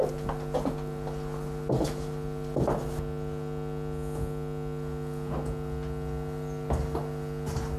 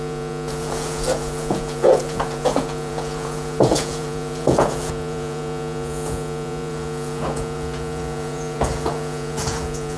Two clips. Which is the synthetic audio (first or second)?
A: second